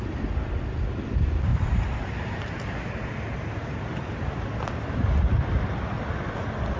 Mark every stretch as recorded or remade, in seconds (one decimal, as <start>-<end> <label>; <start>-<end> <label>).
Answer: 0.0-1.5 recorded; 1.5-3.2 remade; 3.2-3.6 recorded; 3.6-4.5 remade; 4.5-6.8 recorded